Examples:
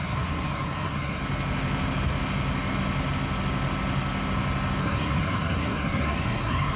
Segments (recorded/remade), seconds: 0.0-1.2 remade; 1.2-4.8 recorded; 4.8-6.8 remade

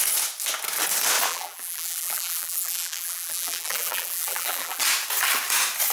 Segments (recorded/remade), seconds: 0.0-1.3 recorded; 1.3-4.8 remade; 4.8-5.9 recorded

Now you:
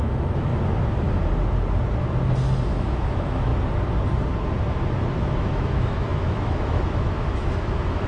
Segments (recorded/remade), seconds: 0.0-0.5 remade; 0.5-2.7 recorded; 2.7-3.5 remade; 3.5-5.2 recorded; 5.2-8.1 remade

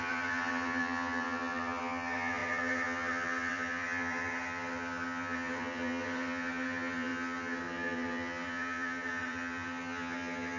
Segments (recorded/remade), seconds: 0.0-10.6 remade

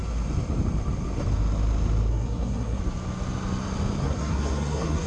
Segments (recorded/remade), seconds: 0.0-2.1 recorded; 2.1-2.8 remade; 2.8-4.0 recorded; 4.0-5.1 remade

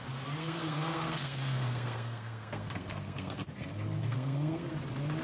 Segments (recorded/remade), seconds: 0.0-0.4 recorded; 0.4-3.5 remade; 3.5-4.0 recorded; 4.0-4.7 remade; 4.7-5.2 recorded

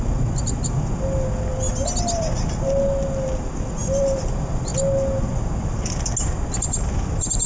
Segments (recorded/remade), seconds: 0.0-3.8 recorded; 3.8-4.3 remade; 4.3-7.5 recorded